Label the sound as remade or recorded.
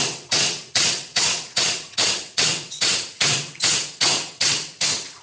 remade